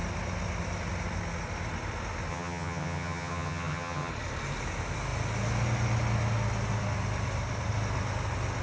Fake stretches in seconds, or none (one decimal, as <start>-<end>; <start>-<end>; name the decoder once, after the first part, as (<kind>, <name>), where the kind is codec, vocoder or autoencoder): 2.3-4.1 (vocoder, HiFi-GAN)